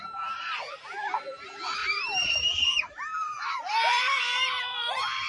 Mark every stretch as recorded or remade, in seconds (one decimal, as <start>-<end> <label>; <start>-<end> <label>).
0.0-1.8 recorded; 1.8-5.3 remade

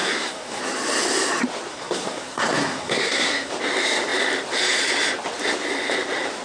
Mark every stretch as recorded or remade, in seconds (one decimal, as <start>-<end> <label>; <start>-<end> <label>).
0.0-0.6 remade; 0.6-1.7 recorded; 1.7-3.5 remade; 3.5-6.4 recorded

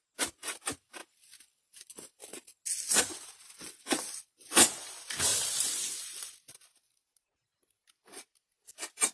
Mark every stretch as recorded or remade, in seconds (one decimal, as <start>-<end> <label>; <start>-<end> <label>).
0.0-3.4 recorded; 3.4-4.0 remade; 4.0-9.1 recorded

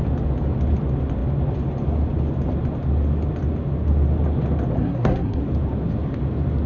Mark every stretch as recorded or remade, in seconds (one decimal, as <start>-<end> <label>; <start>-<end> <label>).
0.0-4.8 recorded; 4.8-5.4 remade; 5.4-6.7 recorded

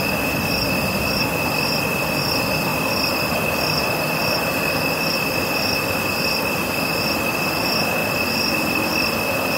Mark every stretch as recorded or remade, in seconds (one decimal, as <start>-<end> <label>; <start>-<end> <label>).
0.0-8.0 recorded; 8.0-9.1 remade; 9.1-9.6 recorded

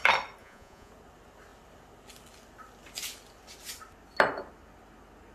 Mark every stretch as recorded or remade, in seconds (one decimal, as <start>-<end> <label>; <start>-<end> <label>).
0.0-0.4 recorded; 0.4-0.9 remade; 0.9-5.3 recorded

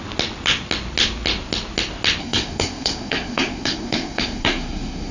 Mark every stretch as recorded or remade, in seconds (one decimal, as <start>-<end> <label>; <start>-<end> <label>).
0.0-2.2 recorded; 2.2-5.1 remade

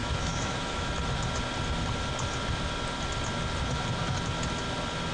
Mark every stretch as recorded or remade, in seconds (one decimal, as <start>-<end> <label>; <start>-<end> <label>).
0.0-0.9 remade; 0.9-5.1 recorded